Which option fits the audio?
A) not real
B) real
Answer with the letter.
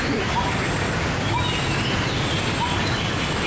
B